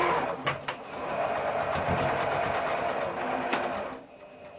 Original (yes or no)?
yes